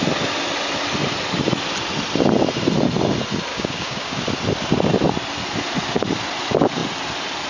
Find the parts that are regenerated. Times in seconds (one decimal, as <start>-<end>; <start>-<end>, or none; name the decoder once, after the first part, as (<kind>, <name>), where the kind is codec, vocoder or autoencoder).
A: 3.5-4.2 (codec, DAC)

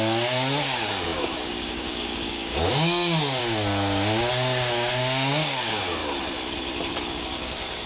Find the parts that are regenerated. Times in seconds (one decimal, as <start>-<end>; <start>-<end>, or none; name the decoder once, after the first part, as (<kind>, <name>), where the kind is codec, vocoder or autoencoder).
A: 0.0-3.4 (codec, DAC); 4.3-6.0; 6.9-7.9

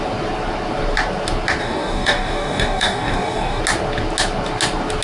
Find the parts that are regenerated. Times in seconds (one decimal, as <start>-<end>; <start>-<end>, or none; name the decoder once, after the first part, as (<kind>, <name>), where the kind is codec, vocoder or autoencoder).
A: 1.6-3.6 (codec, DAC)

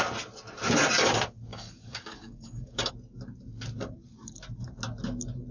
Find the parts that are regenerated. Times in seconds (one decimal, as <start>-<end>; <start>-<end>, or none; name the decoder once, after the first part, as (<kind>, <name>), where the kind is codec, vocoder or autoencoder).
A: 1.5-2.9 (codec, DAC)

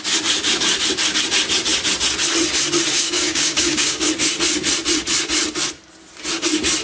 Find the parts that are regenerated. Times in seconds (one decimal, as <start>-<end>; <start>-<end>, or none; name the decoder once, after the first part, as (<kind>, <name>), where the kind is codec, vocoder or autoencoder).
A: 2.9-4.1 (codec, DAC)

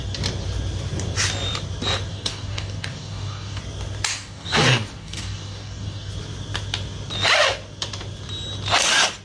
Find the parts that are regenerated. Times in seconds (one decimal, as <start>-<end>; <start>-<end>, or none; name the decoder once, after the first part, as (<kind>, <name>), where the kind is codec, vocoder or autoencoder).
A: 2.1-3.6 (codec, DAC); 4.1-6.1